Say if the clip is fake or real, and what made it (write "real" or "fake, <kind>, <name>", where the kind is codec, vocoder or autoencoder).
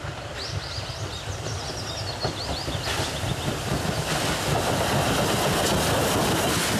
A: real